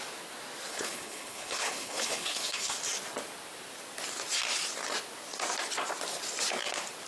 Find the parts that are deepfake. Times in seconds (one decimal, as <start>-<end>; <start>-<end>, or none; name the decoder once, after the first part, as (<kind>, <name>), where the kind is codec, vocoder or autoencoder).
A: 0.7-2.7 (codec, HILCodec)